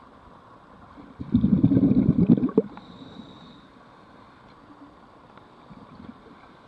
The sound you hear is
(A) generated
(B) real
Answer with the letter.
B